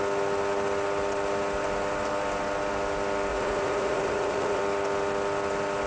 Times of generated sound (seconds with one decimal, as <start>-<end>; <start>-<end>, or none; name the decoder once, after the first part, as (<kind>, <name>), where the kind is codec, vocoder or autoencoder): 3.3-4.6 (vocoder, Vocos)